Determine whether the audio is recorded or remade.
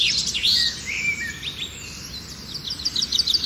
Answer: remade